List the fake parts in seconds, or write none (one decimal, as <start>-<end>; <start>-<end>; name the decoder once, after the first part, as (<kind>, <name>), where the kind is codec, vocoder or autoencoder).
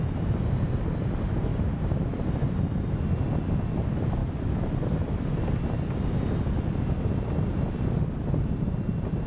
1.5-2.4 (vocoder, BigVGAN v2)